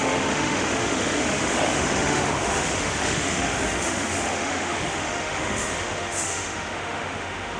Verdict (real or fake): fake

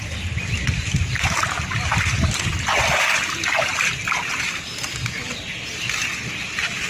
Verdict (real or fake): real